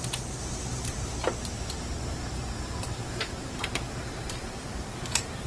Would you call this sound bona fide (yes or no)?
no